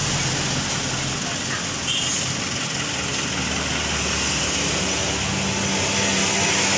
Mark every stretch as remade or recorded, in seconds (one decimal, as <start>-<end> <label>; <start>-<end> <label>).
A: 0.0-6.8 recorded